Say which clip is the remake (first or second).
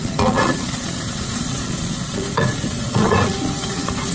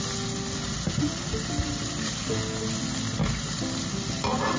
first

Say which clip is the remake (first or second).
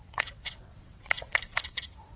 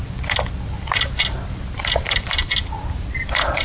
first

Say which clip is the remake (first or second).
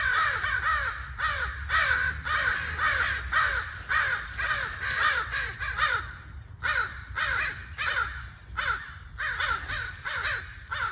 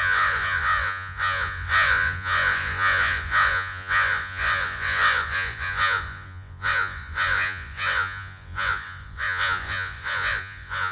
second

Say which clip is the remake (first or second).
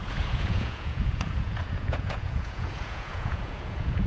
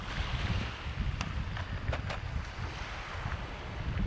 first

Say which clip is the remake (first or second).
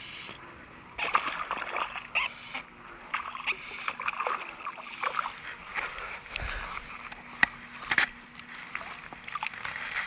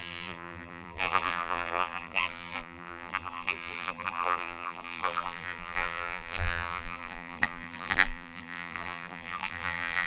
second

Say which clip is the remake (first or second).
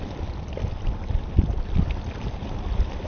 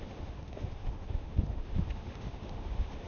second